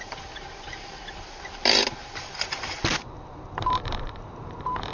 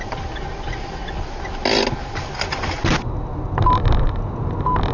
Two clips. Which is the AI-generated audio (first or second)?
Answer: first